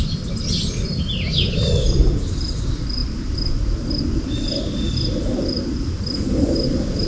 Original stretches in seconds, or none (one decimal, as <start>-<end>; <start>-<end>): 0.0-7.1